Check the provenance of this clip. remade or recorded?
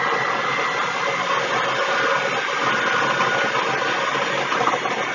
recorded